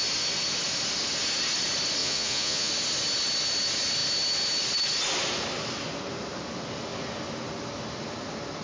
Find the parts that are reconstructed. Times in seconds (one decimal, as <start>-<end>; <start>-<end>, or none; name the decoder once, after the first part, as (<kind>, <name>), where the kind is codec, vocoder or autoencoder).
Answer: 2.0-2.7 (vocoder, Vocos)